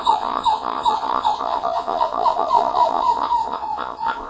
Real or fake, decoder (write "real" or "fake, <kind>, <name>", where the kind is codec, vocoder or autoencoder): fake, vocoder, Vocos